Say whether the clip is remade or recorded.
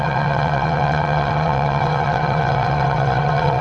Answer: remade